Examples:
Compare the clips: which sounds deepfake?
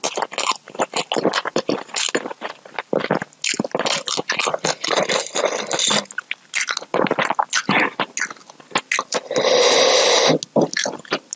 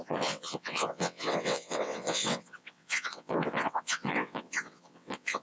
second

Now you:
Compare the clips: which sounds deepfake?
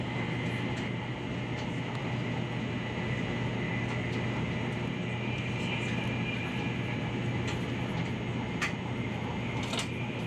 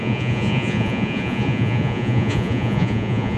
second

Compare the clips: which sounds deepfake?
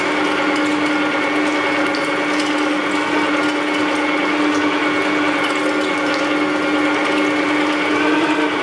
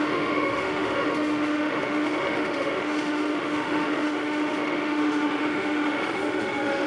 second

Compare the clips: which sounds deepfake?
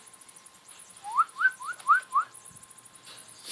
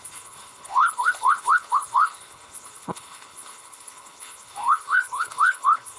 second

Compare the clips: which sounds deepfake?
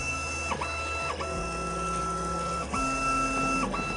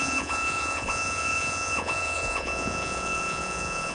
second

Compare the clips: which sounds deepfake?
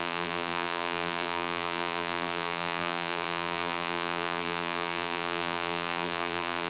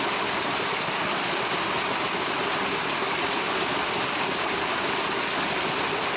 first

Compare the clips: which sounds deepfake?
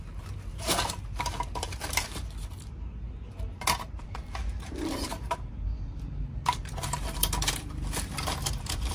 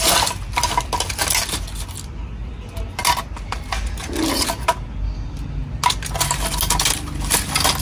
first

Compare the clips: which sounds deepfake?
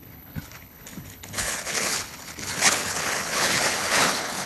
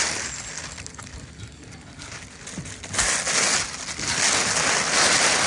first